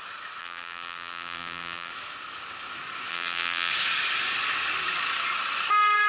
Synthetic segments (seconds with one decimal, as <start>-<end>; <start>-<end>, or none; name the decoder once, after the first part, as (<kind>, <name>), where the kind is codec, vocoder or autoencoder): 0.4-1.9 (vocoder, BigVGAN v2); 3.1-3.7